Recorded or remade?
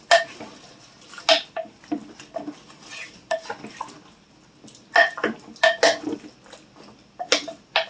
recorded